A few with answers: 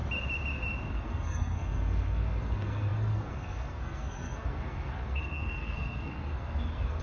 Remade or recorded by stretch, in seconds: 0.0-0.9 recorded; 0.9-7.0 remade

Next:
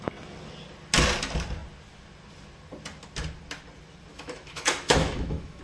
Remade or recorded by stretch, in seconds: 0.0-4.1 recorded; 4.1-5.6 remade

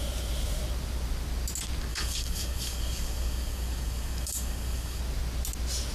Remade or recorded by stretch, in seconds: 0.0-1.9 recorded; 1.9-5.0 remade; 5.0-5.9 recorded

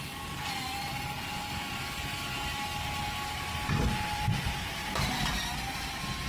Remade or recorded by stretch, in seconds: 0.0-6.3 recorded

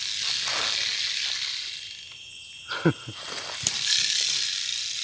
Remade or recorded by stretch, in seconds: 0.0-5.0 recorded